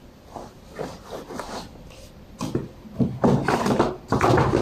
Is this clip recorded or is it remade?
recorded